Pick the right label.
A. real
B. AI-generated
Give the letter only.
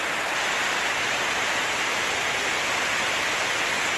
A